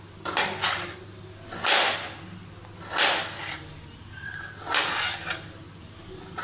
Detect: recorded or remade recorded